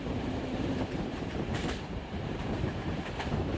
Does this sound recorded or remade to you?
remade